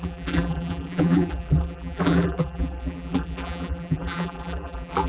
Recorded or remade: remade